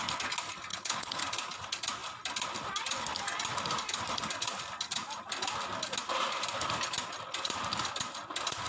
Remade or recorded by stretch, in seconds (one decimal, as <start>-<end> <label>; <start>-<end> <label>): 0.0-0.7 recorded; 0.7-1.2 remade; 1.2-8.7 recorded